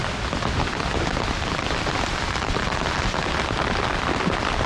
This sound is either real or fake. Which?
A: real